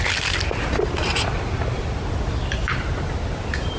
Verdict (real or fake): real